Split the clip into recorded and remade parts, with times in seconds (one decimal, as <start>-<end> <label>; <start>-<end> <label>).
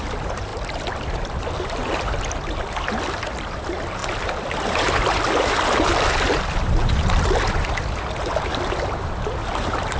0.0-10.0 remade